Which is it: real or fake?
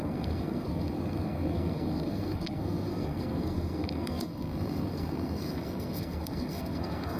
fake